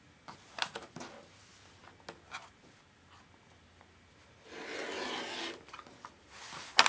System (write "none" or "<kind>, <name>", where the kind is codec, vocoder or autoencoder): none